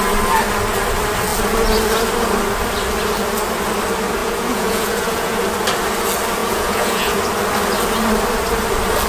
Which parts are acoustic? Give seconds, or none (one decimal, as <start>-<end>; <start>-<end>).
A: 0.0-4.2; 5.4-6.4; 7.2-9.1